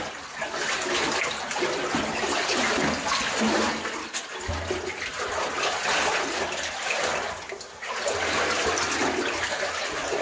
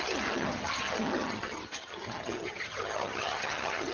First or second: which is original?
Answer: first